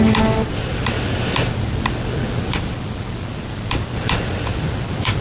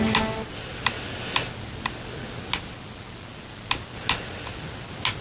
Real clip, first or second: second